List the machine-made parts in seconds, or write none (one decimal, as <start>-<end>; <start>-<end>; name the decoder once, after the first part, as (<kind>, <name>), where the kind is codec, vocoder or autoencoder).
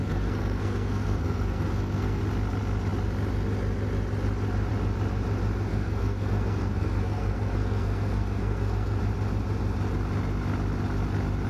0.0-2.2 (codec, SNAC); 5.7-9.0